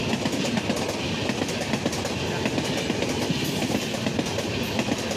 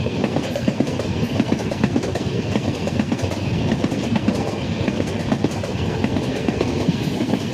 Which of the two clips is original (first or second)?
first